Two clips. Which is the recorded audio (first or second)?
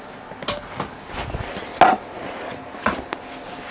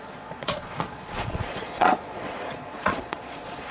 first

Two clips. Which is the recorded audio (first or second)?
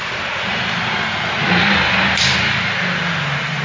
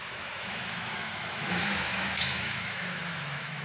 first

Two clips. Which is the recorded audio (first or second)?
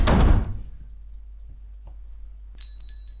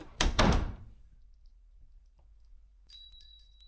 first